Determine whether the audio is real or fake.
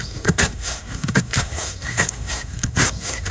fake